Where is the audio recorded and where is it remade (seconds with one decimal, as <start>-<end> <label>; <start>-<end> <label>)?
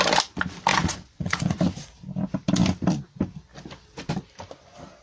0.0-0.7 recorded; 0.7-1.6 remade; 1.6-5.0 recorded